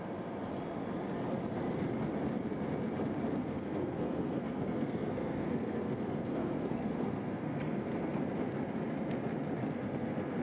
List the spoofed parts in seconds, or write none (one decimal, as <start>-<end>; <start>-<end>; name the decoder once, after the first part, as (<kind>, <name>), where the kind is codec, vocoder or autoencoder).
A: 3.4-8.2 (codec, SNAC); 9.6-10.4